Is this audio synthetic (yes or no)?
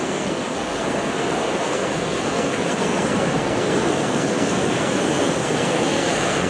yes